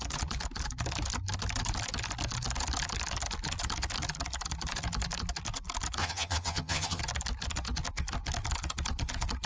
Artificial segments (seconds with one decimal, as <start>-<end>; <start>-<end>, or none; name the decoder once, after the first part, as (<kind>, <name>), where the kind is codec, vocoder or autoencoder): 6.0-7.0 (vocoder, HiFi-GAN)